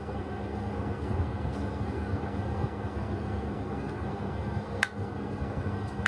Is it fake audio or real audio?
fake